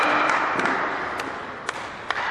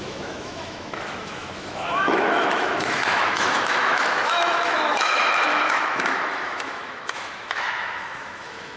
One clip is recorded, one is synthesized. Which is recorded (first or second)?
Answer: first